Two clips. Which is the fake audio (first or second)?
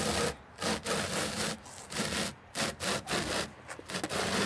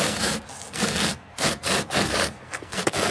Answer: second